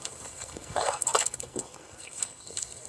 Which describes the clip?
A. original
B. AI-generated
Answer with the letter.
B